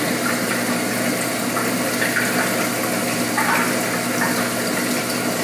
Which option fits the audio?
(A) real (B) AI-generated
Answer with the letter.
A